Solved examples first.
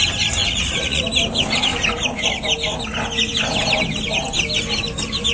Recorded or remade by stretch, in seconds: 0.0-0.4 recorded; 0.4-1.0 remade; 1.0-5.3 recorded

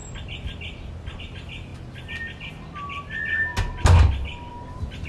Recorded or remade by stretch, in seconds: 0.0-5.1 recorded